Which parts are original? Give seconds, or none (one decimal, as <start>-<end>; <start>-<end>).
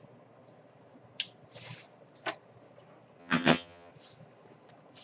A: 0.0-3.2; 3.9-5.0